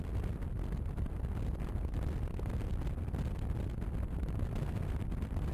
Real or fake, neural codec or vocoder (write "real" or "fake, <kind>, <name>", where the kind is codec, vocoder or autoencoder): real